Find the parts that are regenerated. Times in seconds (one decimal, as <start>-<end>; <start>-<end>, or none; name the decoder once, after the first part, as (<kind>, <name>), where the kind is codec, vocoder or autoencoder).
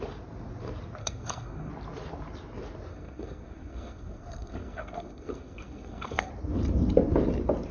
1.0-1.7 (codec, SNAC); 2.9-6.3